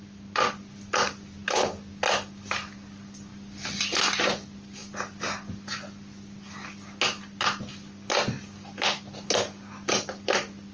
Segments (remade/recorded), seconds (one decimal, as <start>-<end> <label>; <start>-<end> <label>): 0.0-10.7 recorded